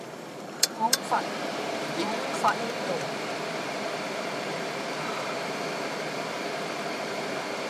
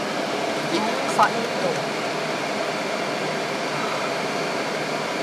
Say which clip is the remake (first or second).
first